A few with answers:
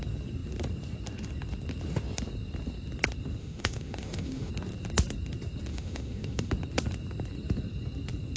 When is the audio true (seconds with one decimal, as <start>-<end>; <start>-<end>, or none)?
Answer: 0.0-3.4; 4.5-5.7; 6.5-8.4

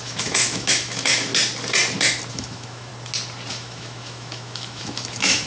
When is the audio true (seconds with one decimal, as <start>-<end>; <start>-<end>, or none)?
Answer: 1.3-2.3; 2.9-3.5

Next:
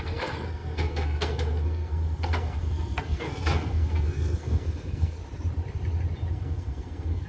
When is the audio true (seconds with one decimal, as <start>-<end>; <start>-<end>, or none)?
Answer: 5.2-6.3

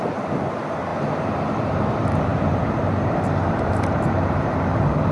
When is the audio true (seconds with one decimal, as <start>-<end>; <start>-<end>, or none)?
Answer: none

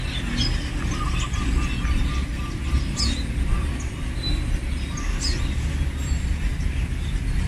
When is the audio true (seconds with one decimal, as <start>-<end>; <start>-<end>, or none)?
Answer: 0.0-2.2; 3.0-7.5